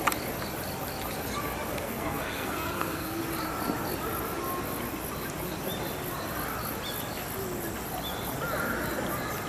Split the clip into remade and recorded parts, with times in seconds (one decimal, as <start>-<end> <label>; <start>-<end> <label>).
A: 0.0-1.7 recorded; 1.7-3.2 remade; 3.2-9.5 recorded